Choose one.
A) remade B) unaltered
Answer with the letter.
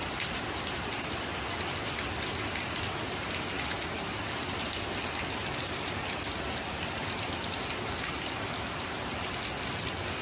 B